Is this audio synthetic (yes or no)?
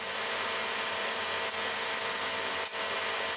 no